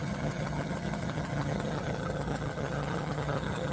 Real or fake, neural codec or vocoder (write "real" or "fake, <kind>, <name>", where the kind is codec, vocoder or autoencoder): fake, vocoder, HiFi-GAN